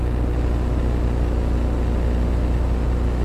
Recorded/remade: recorded